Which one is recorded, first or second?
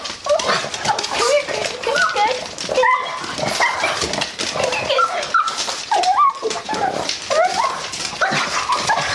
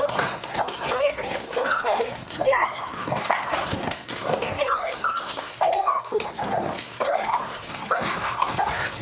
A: first